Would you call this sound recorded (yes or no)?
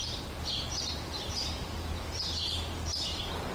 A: yes